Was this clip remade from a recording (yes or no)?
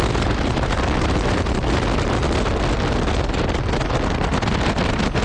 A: no